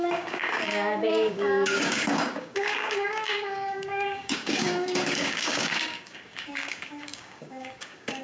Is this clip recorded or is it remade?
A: remade